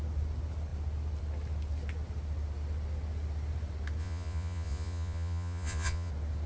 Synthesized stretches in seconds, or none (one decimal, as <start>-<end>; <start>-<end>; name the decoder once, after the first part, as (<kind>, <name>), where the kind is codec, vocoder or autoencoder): 4.0-6.1 (vocoder, Vocos)